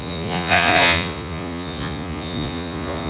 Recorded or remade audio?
remade